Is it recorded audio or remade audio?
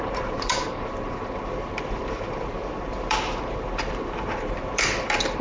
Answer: remade